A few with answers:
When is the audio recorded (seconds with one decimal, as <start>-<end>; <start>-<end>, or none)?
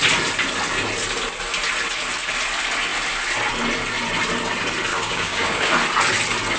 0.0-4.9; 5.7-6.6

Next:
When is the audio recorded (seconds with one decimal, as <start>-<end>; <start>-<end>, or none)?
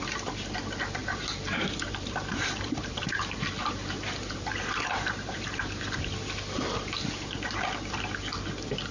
0.0-1.0; 6.1-8.9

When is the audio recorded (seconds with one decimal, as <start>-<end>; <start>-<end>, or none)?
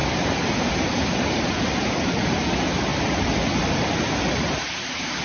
0.0-5.2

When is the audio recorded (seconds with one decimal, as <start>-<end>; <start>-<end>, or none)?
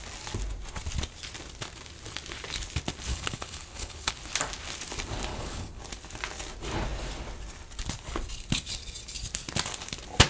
0.0-3.1; 4.1-5.3; 5.8-10.3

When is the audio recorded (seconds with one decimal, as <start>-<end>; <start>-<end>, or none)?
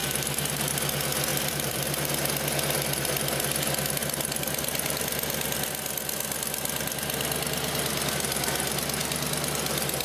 0.7-1.3; 2.1-10.0